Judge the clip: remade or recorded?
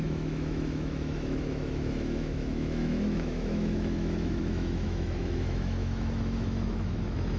remade